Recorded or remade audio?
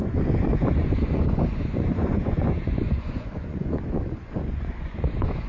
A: remade